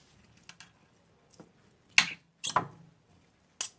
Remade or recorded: recorded